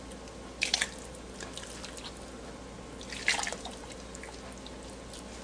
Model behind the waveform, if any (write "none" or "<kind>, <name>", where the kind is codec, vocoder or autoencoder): none